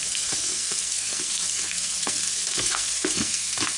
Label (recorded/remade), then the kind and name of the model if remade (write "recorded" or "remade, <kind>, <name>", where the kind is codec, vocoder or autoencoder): remade, codec, SNAC